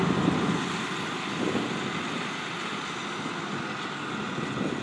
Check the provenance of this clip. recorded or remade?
recorded